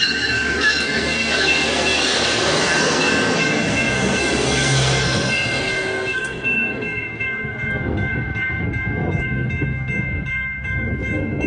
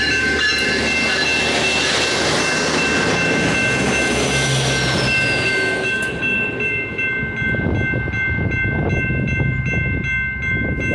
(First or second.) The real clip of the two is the second